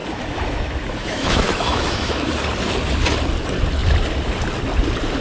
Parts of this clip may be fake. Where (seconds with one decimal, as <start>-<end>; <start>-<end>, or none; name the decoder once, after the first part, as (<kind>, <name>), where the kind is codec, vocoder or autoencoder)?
0.0-2.3 (autoencoder, DAC-VAE)